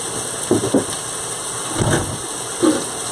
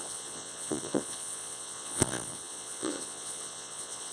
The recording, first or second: first